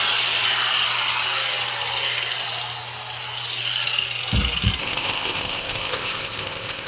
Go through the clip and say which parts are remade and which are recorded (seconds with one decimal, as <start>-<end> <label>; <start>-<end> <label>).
0.0-4.8 recorded; 4.8-6.9 remade